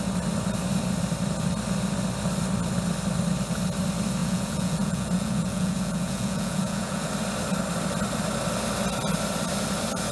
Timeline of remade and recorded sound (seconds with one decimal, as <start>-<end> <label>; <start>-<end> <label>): 0.0-4.2 recorded; 4.2-7.1 remade; 7.1-10.1 recorded